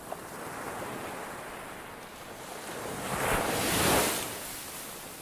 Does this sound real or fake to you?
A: real